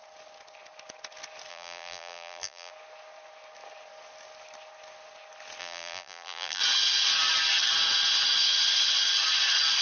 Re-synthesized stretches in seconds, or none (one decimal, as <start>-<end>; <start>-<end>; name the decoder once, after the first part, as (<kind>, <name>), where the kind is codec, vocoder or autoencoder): 1.5-2.7 (vocoder, BigVGAN v2); 5.6-6.6